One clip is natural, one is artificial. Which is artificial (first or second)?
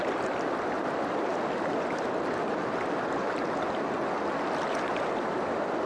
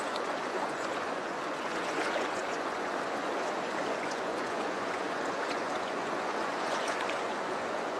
second